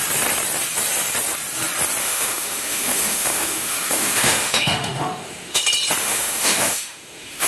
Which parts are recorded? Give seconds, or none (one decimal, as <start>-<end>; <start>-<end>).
0.0-2.0; 5.6-6.0